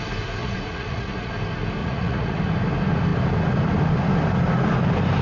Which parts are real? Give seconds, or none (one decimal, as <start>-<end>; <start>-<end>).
0.0-0.4; 1.3-1.8; 2.4-5.2